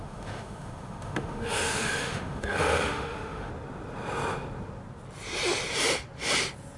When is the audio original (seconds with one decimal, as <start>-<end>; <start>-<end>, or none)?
3.5-6.8